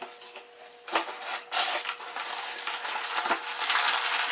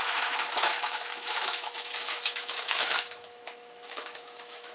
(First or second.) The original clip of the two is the first